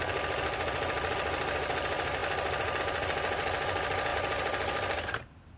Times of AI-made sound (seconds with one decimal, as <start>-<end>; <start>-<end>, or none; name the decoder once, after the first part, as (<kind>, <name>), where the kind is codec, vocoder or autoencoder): none